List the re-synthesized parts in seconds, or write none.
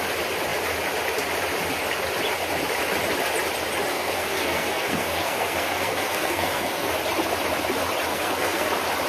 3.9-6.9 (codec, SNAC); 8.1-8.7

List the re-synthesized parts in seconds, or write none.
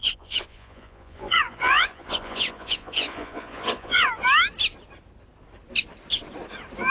0.0-4.1 (vocoder, Vocos)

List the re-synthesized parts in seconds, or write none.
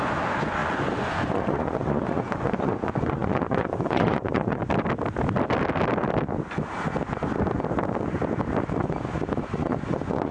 0.0-4.6 (vocoder, Vocos); 9.4-10.3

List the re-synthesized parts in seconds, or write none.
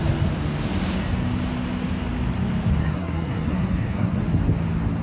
2.8-4.2 (codec, SNAC)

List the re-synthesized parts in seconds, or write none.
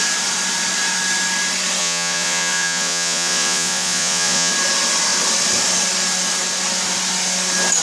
1.8-4.5 (vocoder, Vocos)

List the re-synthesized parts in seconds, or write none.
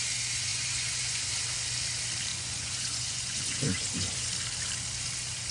0.5-1.3 (vocoder, Vocos); 2.3-4.3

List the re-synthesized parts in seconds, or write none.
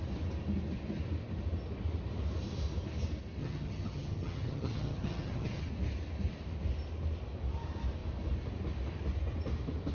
3.4-5.7 (vocoder, HiFi-GAN)